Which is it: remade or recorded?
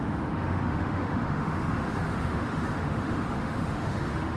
remade